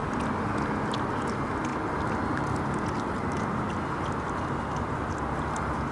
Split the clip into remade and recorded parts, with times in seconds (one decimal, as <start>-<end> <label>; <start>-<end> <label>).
0.0-5.9 recorded